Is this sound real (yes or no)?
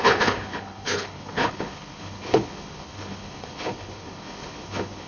no